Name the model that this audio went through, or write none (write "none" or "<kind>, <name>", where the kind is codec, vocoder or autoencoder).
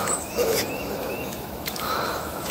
autoencoder, DAC-VAE